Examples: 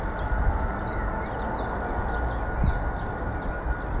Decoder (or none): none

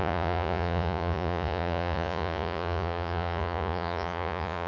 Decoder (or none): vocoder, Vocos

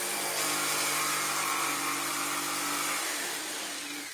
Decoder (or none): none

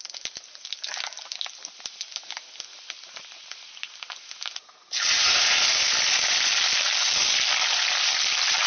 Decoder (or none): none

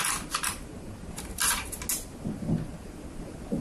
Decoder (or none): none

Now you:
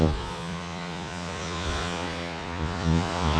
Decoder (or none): vocoder, Vocos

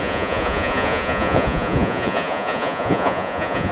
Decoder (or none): vocoder, Vocos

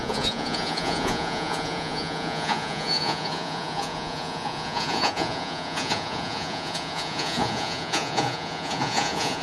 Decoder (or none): vocoder, Vocos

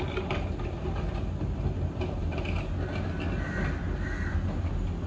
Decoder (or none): none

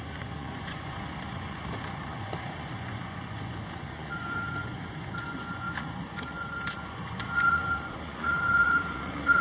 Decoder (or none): vocoder, Vocos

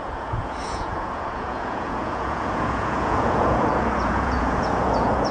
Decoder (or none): vocoder, Vocos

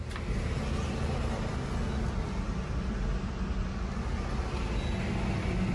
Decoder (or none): none